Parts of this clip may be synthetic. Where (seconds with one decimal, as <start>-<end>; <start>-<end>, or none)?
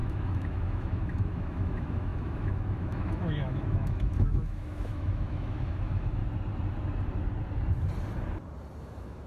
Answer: 0.0-6.2; 8.8-9.3